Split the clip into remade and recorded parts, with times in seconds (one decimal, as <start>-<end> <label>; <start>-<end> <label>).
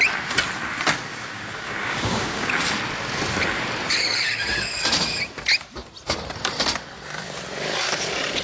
0.0-1.1 recorded; 1.1-2.5 remade; 2.5-8.4 recorded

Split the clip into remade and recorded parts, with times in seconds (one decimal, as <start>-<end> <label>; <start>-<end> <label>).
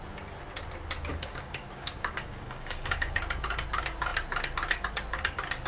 0.0-1.1 recorded; 1.1-3.2 remade; 3.2-5.7 recorded